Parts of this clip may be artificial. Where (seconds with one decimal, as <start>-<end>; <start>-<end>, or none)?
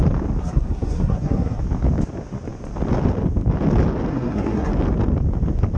0.4-1.6; 4.1-4.7